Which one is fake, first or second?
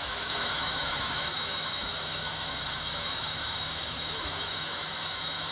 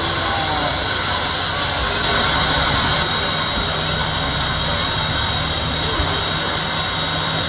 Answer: first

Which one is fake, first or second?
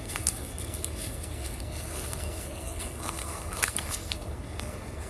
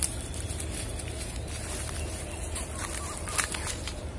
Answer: first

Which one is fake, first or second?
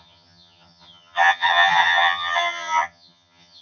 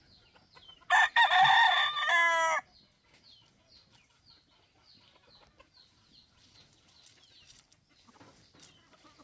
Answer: first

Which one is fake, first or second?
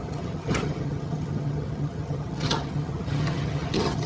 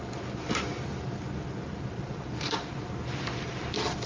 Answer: first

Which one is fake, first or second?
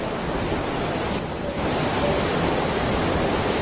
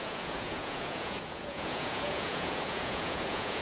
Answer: second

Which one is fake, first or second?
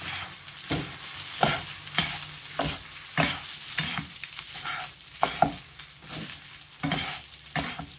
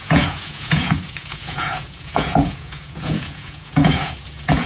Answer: second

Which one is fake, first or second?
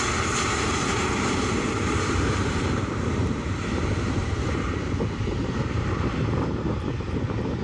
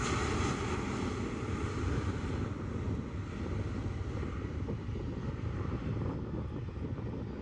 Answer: first